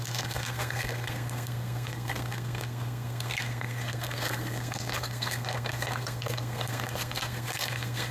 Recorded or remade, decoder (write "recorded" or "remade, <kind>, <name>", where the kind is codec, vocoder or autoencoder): remade, codec, SNAC